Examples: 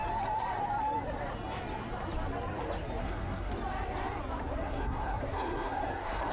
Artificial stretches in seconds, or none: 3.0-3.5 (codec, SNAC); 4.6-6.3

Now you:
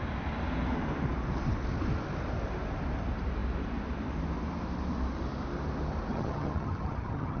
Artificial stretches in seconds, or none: 6.1-7.4 (vocoder, HiFi-GAN)

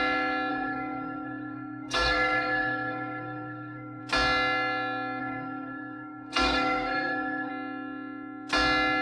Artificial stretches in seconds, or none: 0.5-4.0 (codec, SNAC); 5.2-7.5

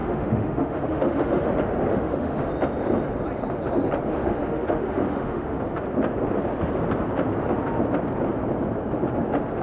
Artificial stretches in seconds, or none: 0.0-1.5 (autoencoder, DAC-VAE); 1.9-2.5; 4.1-5.6